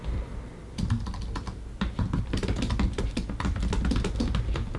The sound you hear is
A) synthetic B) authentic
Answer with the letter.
B